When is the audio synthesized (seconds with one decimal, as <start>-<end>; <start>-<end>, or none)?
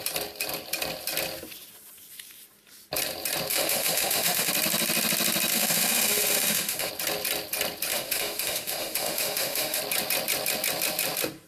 3.5-4.5; 5.5-6.9; 7.9-9.8